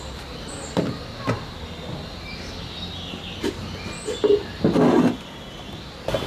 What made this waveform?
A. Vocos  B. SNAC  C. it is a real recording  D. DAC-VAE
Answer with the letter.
C